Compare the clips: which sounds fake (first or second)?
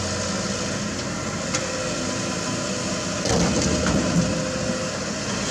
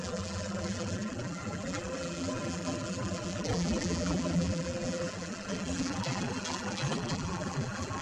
second